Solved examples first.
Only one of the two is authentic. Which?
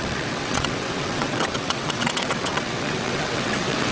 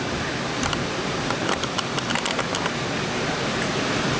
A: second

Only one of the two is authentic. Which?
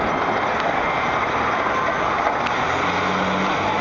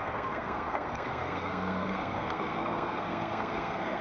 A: first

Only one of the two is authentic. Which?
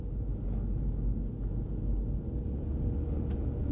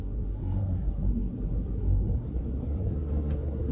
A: first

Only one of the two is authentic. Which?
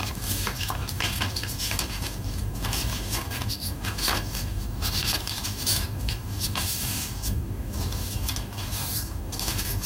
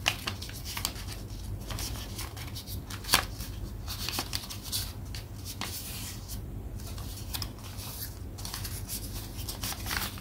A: second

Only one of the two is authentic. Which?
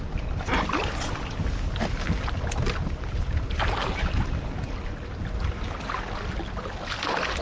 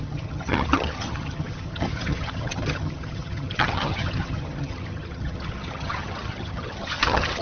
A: first